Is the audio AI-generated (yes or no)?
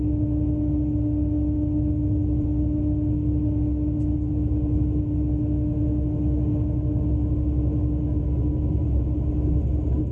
no